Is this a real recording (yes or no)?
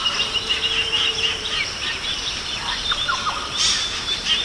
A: no